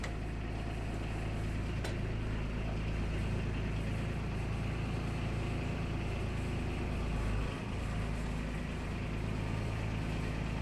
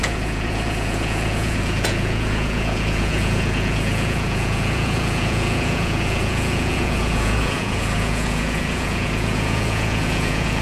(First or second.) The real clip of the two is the first